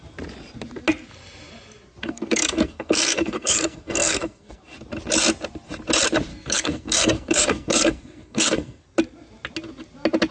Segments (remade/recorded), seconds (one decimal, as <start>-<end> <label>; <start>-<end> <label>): 0.0-2.0 recorded; 2.0-4.6 remade; 4.6-6.3 recorded; 6.3-8.8 remade; 8.8-10.3 recorded